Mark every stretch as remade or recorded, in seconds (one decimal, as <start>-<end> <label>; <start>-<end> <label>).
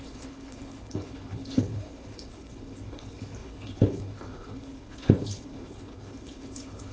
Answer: 0.0-6.9 remade